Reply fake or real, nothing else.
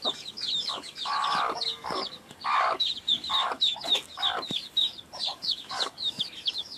fake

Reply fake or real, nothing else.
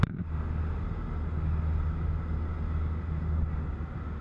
real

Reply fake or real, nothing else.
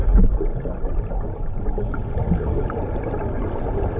real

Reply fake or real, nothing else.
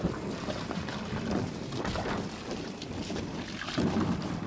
fake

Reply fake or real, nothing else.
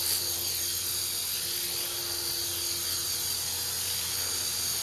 real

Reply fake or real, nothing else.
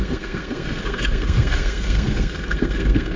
fake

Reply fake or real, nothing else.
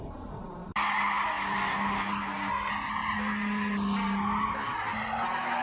real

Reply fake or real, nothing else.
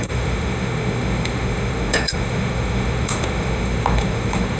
fake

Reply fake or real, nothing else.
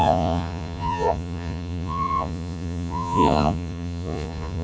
fake